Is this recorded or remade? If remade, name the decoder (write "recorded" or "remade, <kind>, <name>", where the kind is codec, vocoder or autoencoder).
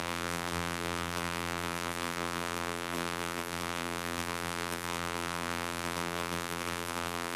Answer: remade, vocoder, BigVGAN v2